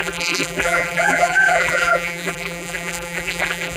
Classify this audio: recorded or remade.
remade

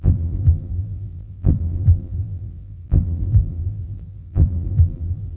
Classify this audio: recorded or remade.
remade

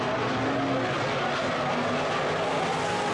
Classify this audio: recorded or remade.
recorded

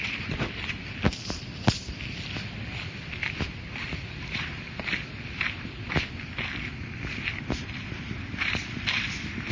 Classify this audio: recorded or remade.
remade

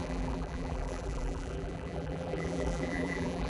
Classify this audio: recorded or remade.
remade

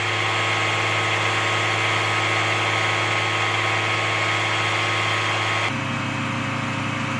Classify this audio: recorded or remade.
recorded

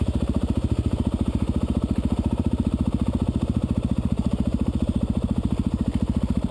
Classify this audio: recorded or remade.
remade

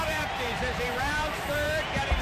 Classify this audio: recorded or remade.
remade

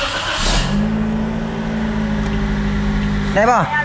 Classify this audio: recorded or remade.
recorded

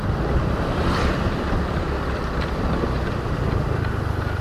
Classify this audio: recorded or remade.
remade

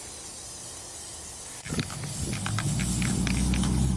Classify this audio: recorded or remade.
recorded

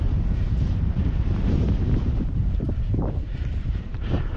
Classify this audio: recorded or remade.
remade